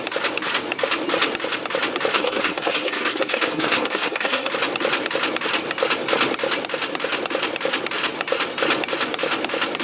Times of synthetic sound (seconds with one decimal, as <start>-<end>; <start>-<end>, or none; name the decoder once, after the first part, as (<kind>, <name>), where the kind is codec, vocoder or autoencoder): 2.1-4.5 (codec, SNAC)

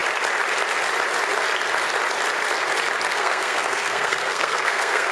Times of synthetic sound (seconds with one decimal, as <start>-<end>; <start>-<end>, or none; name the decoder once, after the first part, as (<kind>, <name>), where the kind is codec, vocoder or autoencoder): 3.1-5.1 (codec, SNAC)

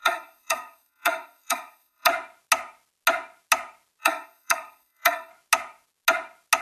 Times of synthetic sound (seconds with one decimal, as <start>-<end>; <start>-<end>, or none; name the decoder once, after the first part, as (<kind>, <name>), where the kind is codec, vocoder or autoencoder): 0.0-2.1 (codec, SNAC); 4.0-5.3

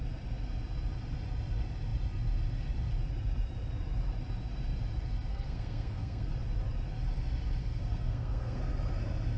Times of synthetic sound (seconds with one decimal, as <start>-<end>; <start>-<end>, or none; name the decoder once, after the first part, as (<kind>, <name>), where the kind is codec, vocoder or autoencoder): 5.3-6.3 (codec, SNAC); 7.6-8.6

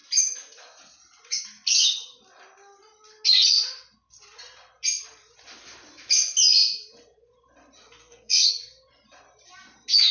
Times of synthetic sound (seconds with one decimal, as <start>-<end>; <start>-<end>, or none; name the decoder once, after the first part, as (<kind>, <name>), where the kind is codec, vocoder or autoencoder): 8.0-8.5 (codec, SNAC)

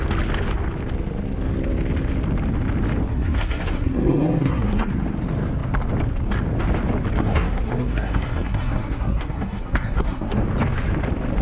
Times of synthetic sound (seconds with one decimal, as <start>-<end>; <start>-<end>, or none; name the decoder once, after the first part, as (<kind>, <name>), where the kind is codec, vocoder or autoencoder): 3.1-4.9 (codec, SNAC); 7.2-10.4

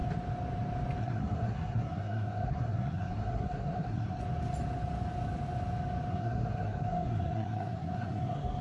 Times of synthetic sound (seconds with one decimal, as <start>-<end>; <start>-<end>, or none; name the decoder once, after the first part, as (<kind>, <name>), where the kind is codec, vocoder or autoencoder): 1.0-4.2 (codec, SNAC); 6.1-8.6